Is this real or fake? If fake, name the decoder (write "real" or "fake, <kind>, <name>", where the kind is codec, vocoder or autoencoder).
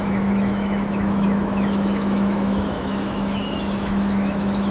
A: fake, autoencoder, DAC-VAE